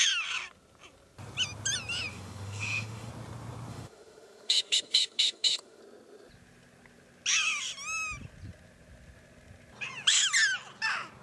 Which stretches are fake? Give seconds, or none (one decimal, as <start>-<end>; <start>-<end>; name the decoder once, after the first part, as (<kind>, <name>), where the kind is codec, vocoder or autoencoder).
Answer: 2.1-3.1 (autoencoder, DAC-VAE); 3.7-5.8